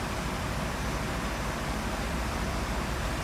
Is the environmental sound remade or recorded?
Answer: remade